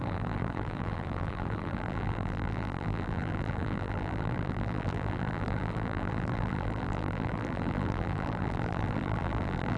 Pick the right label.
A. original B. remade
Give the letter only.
B